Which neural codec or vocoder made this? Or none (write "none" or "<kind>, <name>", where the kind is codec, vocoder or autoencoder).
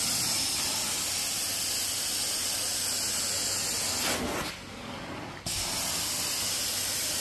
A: none